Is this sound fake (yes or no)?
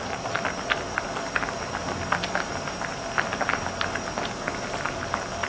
no